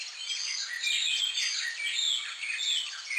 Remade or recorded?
recorded